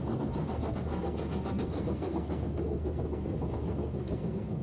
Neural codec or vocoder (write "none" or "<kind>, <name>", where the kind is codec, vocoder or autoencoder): codec, SNAC